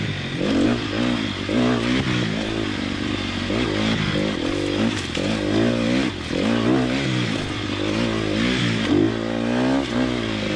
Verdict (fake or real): real